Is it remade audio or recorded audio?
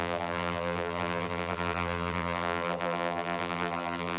remade